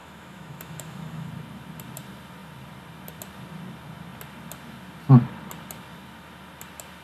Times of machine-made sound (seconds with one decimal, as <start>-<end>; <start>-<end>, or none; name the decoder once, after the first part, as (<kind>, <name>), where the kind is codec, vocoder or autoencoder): 0.0-1.3 (autoencoder, DAC-VAE)